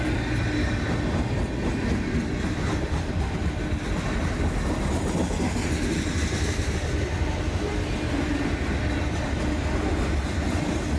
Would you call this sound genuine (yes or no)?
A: yes